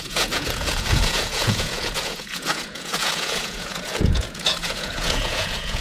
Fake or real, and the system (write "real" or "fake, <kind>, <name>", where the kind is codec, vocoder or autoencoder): fake, vocoder, Vocos